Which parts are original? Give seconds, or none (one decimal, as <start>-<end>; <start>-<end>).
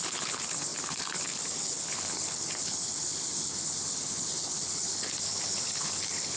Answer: none